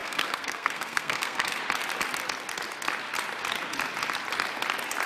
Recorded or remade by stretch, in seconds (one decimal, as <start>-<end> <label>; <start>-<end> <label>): 0.0-1.6 remade; 1.6-5.1 recorded